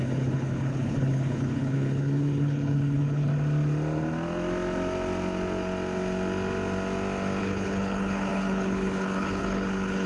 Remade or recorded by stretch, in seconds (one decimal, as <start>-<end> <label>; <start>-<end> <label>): 0.0-3.3 remade; 3.3-7.4 recorded; 7.4-10.1 remade